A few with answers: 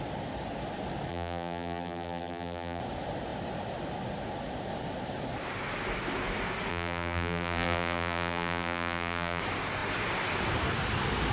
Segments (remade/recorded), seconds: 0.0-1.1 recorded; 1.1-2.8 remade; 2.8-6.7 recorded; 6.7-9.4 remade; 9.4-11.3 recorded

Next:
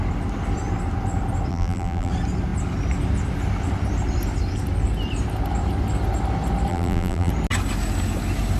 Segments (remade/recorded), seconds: 0.0-1.5 recorded; 1.5-2.1 remade; 2.1-6.7 recorded; 6.7-7.3 remade; 7.3-8.6 recorded

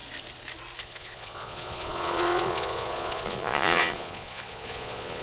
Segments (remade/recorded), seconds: 0.0-0.8 recorded; 0.8-5.2 remade

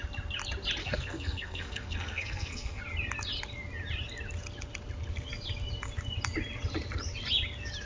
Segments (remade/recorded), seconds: 0.0-0.8 recorded; 0.8-2.8 remade; 2.8-7.9 recorded